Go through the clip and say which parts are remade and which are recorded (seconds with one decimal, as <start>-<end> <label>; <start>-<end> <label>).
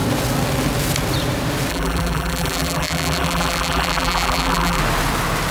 0.0-1.7 recorded; 1.7-4.8 remade; 4.8-5.5 recorded